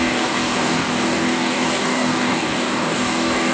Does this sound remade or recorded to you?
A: remade